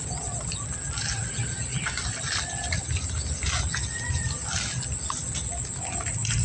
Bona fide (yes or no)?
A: yes